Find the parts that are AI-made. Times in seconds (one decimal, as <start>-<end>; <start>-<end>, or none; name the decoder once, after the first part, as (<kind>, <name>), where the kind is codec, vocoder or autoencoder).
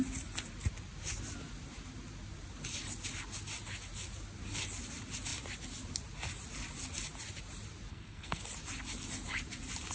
7.9-8.4 (codec, SNAC)